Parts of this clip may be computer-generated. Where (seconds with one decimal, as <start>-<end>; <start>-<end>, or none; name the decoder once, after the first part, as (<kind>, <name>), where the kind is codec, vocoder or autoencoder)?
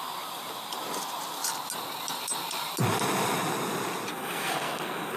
4.1-5.2 (codec, SNAC)